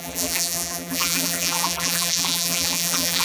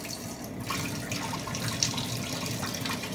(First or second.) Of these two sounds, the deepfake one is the first